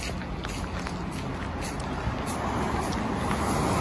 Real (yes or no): yes